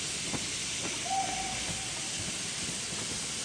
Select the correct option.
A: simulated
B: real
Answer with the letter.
B